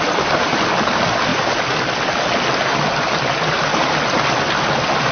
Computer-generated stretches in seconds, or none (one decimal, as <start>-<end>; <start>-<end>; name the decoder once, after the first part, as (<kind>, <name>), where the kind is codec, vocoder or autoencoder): none